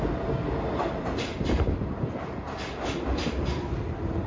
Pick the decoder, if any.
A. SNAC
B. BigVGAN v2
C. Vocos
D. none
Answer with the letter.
D